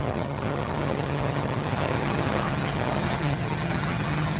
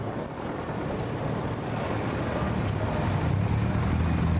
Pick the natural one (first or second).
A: second